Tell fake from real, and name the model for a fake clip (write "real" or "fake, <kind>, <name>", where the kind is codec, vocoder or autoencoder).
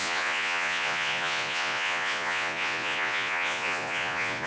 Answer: fake, vocoder, Vocos